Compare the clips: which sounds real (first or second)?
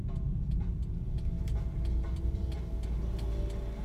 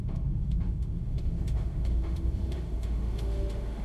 first